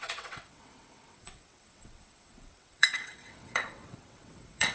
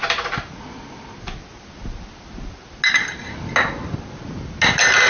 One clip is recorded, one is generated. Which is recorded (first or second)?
second